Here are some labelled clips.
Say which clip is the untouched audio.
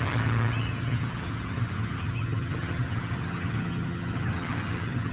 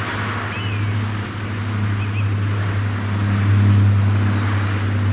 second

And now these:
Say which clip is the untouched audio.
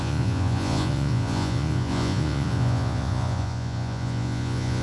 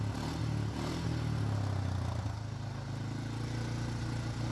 second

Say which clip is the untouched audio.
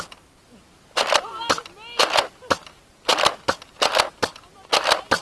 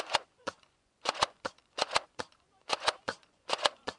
first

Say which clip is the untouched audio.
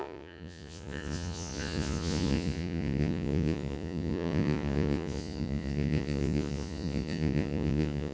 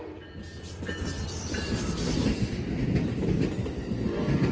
second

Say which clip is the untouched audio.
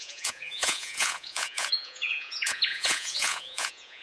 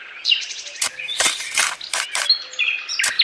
second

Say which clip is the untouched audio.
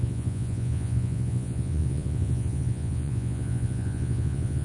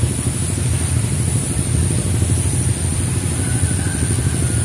second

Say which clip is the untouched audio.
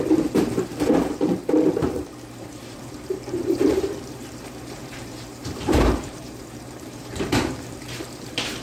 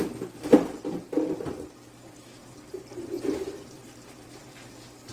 second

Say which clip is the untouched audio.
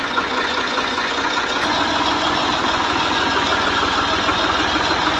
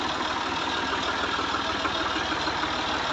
second